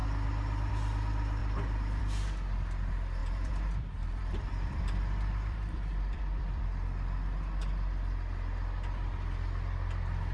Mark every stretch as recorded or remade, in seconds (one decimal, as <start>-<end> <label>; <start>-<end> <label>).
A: 0.0-3.2 recorded; 3.2-6.6 remade; 6.6-10.3 recorded